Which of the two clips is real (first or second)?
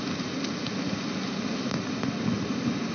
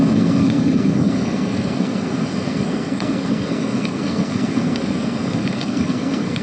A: first